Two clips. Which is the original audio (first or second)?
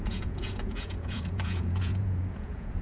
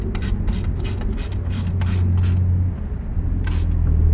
second